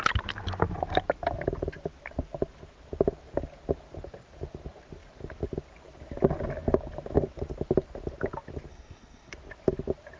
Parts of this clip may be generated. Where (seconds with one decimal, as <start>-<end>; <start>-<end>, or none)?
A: 8.7-9.3